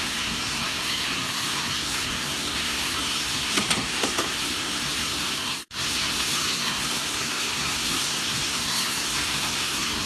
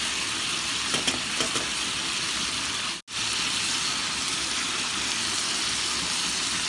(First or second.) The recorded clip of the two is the second